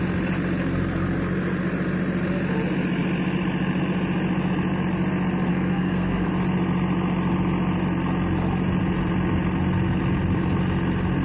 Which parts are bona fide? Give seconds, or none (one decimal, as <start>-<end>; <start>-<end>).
0.0-5.5; 6.3-11.2